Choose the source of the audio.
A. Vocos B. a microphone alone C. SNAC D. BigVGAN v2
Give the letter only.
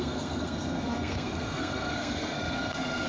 C